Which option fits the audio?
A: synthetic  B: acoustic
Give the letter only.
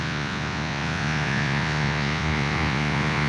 A